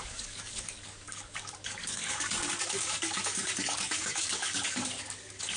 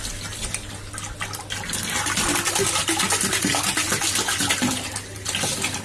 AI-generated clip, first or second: first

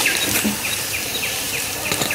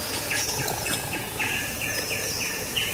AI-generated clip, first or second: second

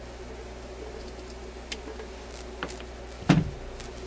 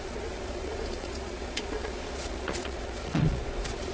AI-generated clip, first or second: second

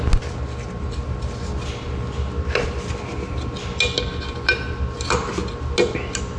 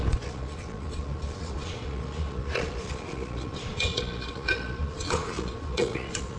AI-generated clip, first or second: second